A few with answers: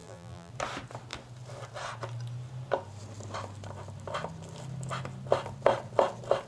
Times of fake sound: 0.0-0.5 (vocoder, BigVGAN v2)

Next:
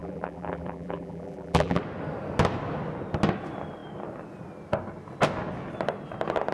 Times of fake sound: 0.0-1.8 (vocoder, BigVGAN v2)